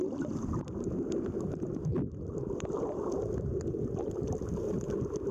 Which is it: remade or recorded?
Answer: recorded